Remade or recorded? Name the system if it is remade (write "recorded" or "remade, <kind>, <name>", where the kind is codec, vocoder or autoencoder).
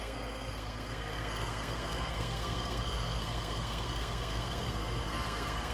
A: remade, codec, SNAC